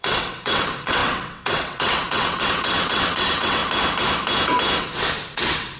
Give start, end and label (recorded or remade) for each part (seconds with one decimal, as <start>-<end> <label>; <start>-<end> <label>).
0.0-3.6 remade; 3.6-4.8 recorded; 4.8-5.8 remade